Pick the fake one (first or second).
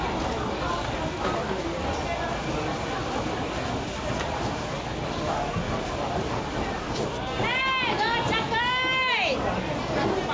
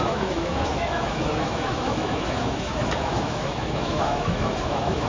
second